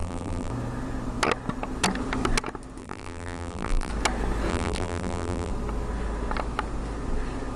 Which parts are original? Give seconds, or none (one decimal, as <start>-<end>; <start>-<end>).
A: 0.5-2.8; 3.9-4.5; 5.5-7.6